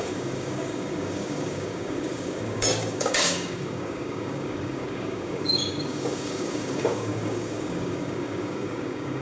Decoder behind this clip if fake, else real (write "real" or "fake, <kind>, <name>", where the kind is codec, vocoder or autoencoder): fake, codec, DAC